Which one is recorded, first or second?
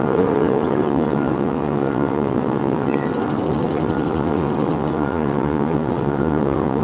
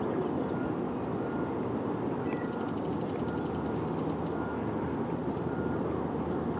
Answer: second